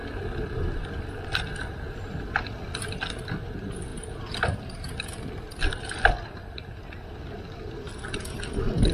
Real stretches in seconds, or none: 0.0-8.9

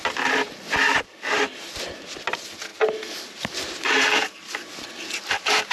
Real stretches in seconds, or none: 0.0-5.7